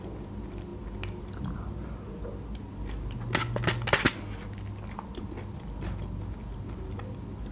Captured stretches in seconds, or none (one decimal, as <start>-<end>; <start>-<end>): 0.0-7.5